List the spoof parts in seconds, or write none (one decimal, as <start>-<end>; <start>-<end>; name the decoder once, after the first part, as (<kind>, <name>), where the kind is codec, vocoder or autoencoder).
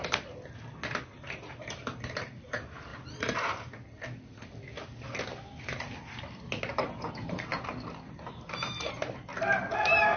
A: 0.9-2.9 (vocoder, BigVGAN v2); 7.1-7.5; 8.3-9.3